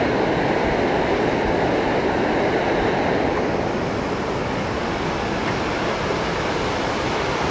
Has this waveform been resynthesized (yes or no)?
no